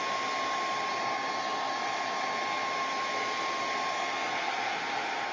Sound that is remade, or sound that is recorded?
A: recorded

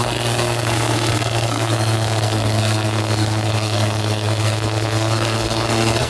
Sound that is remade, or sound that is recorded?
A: remade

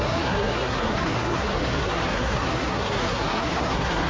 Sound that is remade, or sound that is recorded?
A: remade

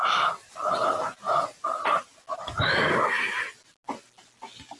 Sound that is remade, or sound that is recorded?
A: recorded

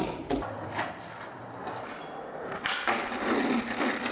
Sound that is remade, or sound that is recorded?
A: recorded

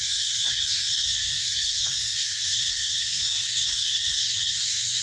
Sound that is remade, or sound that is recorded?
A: remade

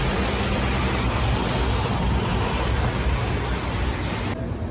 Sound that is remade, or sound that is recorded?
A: recorded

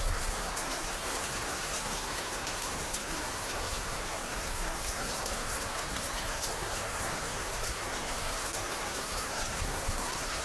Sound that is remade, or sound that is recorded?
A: remade